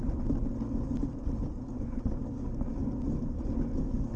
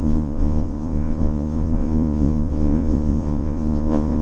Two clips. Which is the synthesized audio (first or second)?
second